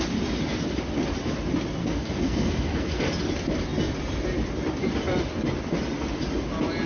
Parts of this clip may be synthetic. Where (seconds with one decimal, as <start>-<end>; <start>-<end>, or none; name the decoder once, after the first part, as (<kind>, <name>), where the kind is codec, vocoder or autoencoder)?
1.8-3.0 (codec, SNAC)